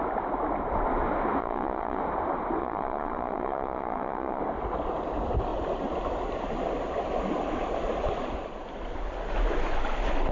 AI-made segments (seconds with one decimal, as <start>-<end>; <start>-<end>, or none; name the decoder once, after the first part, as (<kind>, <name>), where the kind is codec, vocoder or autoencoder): 1.4-2.0 (vocoder, Vocos); 2.6-4.4